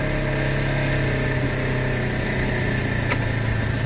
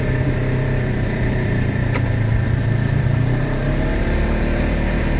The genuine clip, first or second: first